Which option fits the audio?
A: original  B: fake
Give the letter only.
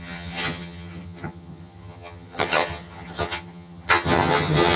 B